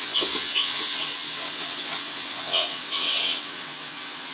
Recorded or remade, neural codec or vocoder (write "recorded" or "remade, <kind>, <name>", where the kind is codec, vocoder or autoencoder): remade, vocoder, WaveNeXt